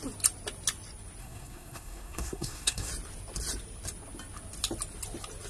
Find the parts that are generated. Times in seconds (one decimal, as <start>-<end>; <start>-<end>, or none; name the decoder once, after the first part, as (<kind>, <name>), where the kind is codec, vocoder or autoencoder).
1.2-2.9 (codec, SNAC)